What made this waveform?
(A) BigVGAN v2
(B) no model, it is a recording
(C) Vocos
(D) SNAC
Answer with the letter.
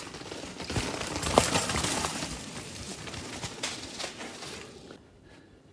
A